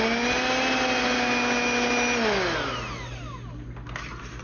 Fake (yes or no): no